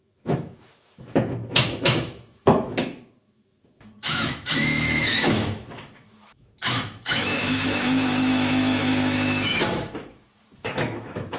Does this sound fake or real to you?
fake